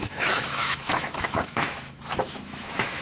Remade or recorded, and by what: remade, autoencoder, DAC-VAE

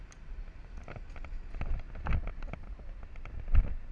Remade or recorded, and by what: recorded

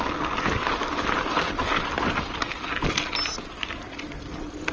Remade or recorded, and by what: recorded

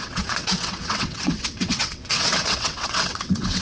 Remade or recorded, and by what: remade, vocoder, WaveNeXt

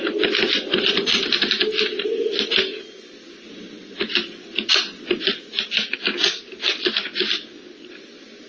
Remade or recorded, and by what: recorded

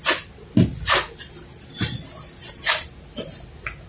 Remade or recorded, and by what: recorded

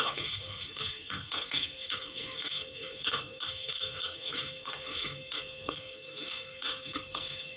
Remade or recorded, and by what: remade, codec, SNAC